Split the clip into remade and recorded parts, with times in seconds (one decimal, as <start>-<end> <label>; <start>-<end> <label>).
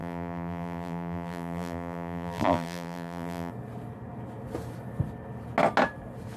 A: 0.0-3.5 remade; 3.5-6.4 recorded